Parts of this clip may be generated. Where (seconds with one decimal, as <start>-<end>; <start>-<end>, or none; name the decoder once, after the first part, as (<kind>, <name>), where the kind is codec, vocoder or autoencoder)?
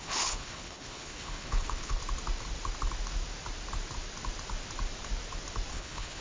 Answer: 0.0-2.0 (codec, HILCodec); 5.7-6.2